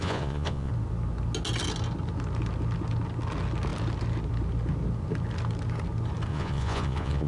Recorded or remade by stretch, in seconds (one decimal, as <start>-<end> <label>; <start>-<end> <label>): 0.0-0.7 remade; 0.7-6.3 recorded; 6.3-7.3 remade